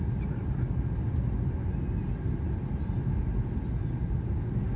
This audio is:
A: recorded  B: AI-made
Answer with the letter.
A